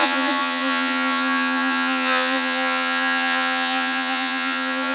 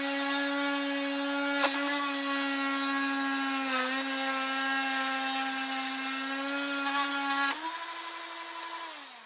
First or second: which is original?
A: second